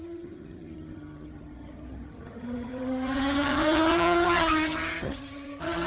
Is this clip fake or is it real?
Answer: fake